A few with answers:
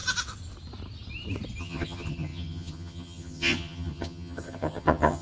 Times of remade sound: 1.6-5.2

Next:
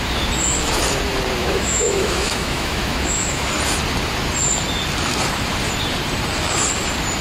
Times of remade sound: 1.4-3.5